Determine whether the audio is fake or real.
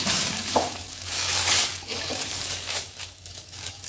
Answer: fake